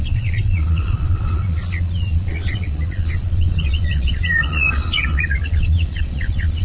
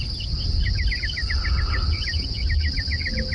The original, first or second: second